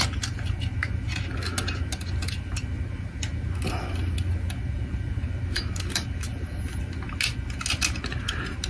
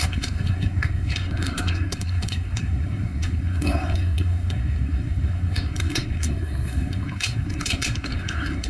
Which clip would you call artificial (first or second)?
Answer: second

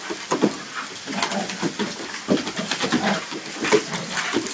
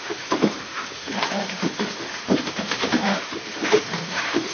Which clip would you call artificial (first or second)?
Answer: second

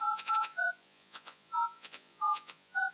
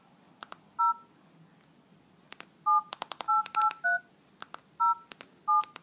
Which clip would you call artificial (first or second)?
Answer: first